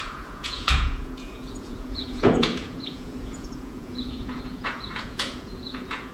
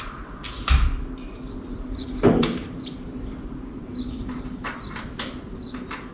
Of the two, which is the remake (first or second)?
first